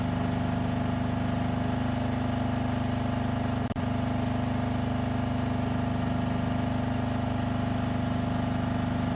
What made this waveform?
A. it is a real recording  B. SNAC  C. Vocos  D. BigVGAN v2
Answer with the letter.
A